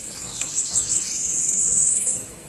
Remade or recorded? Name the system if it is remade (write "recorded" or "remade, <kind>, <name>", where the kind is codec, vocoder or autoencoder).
remade, codec, SNAC